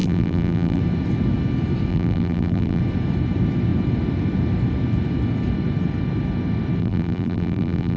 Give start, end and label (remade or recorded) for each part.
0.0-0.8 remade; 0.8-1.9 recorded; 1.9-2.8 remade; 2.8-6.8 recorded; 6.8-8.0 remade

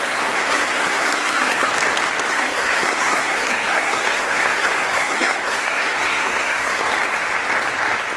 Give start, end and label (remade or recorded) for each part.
0.0-1.7 remade; 1.7-2.3 recorded; 2.3-6.8 remade; 6.8-8.2 recorded